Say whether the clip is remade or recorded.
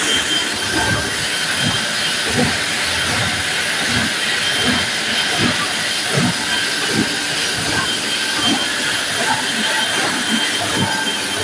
recorded